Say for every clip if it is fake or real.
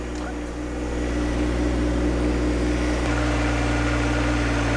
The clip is real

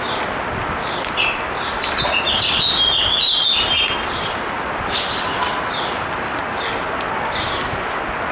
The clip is real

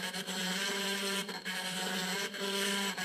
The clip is fake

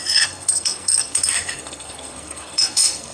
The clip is fake